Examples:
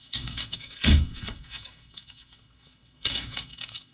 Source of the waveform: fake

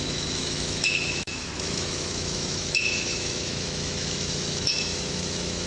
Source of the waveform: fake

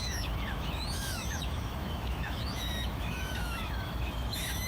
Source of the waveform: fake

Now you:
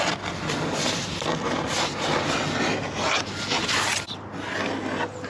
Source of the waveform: real